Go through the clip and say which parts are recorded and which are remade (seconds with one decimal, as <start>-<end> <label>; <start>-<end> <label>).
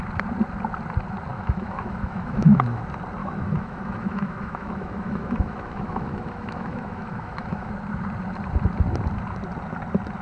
0.0-1.3 recorded; 1.3-2.8 remade; 2.8-3.2 recorded; 3.2-7.7 remade; 7.7-10.2 recorded